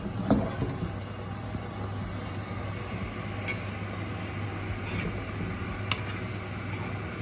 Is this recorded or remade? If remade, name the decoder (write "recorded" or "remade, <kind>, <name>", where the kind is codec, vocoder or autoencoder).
recorded